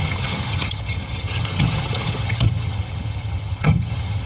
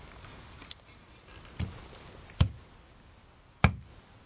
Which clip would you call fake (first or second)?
first